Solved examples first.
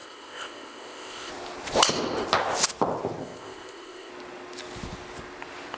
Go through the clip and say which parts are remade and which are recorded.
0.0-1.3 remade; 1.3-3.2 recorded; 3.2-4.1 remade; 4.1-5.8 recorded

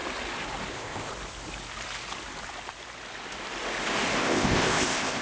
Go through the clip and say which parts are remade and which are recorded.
0.0-0.7 recorded; 0.7-1.1 remade; 1.1-4.2 recorded; 4.2-5.2 remade

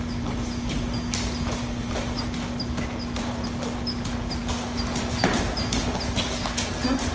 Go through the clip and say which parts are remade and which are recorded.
0.0-7.1 recorded

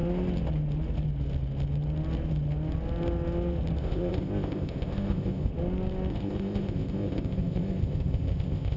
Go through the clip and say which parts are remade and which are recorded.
0.0-3.8 recorded; 3.8-5.5 remade; 5.5-6.1 recorded; 6.1-8.8 remade